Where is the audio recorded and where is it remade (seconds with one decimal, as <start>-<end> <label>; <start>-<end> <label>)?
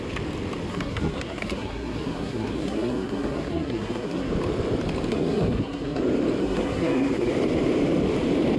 0.0-0.7 recorded; 0.7-4.3 remade; 4.3-5.1 recorded; 5.1-6.0 remade; 6.0-6.4 recorded; 6.4-7.3 remade; 7.3-8.6 recorded